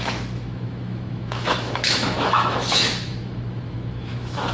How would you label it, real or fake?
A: fake